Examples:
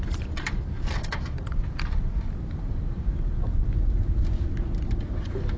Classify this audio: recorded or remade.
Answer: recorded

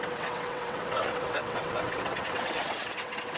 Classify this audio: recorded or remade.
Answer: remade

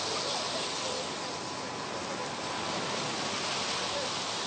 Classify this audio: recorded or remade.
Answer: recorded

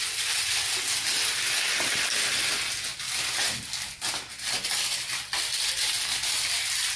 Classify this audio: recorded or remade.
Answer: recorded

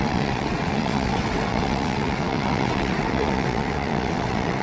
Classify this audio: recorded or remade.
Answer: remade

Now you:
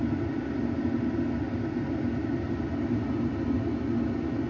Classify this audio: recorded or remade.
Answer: recorded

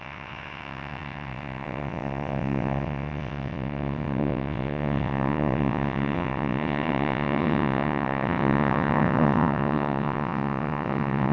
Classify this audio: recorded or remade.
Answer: remade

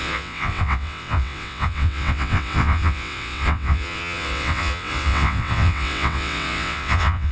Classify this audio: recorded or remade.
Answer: remade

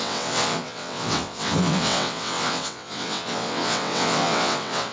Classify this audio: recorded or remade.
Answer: remade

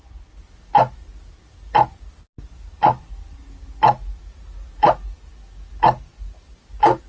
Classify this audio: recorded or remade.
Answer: recorded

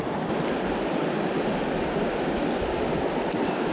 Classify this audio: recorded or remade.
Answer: recorded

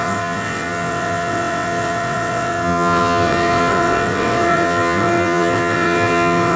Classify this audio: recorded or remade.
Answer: remade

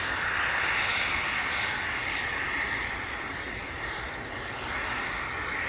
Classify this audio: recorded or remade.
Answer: recorded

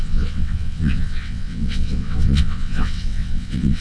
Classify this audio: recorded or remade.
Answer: remade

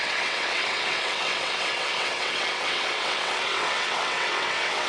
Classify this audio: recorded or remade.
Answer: remade